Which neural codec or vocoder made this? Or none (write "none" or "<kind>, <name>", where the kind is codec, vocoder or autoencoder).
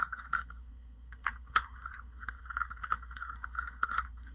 codec, SNAC